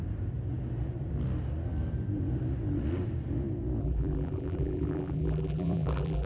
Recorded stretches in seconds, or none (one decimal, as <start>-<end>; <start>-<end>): 0.0-3.8